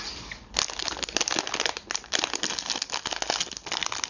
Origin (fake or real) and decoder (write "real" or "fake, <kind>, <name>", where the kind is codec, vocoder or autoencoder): real